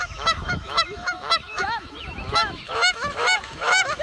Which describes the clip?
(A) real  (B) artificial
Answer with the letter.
B